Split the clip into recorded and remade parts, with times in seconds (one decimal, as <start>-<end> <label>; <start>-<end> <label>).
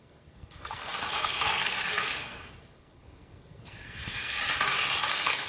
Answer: 0.0-4.4 remade; 4.4-5.1 recorded; 5.1-5.5 remade